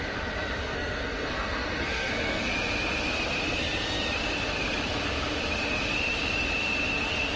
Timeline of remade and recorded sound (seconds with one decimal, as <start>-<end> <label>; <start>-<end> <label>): 0.0-0.6 recorded; 0.6-2.5 remade; 2.5-7.4 recorded

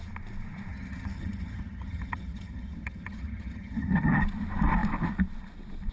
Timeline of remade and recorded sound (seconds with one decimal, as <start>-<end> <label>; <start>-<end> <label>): 0.0-0.7 recorded; 0.7-4.2 remade; 4.2-5.9 recorded

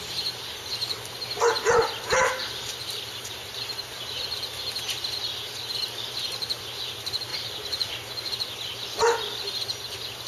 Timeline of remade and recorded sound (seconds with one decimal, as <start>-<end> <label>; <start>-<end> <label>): 0.0-2.4 recorded; 2.4-4.4 remade; 4.4-7.3 recorded; 7.3-7.9 remade; 7.9-10.3 recorded

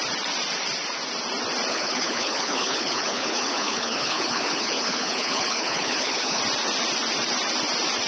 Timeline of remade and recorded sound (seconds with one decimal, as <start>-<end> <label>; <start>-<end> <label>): 0.0-1.7 recorded; 1.7-6.4 remade; 6.4-8.1 recorded

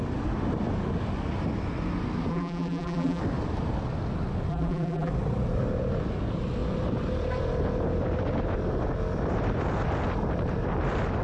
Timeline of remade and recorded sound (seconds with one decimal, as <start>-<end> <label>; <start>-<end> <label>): 0.0-2.3 recorded; 2.3-3.2 remade; 3.2-4.5 recorded; 4.5-5.1 remade; 5.1-11.2 recorded